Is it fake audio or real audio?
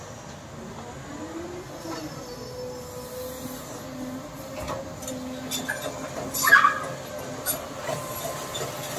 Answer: real